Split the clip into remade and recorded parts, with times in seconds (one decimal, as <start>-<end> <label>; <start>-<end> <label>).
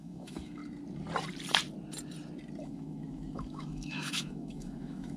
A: 0.0-0.6 remade; 0.6-2.6 recorded; 2.6-5.2 remade